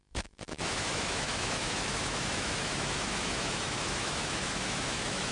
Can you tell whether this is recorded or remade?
remade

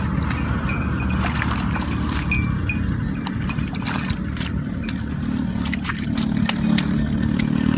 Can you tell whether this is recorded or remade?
recorded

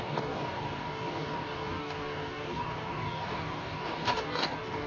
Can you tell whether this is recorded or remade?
remade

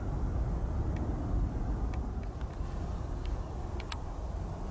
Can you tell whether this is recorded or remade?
recorded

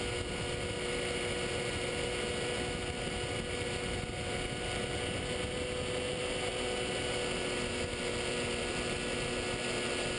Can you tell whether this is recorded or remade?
recorded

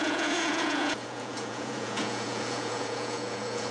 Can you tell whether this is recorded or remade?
remade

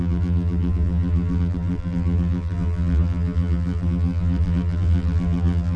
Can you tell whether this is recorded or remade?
remade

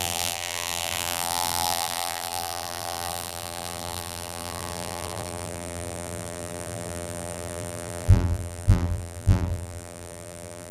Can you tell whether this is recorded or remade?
remade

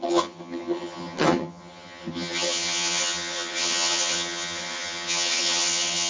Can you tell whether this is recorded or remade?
remade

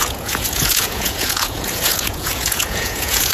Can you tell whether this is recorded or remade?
remade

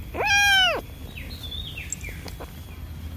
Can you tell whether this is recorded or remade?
recorded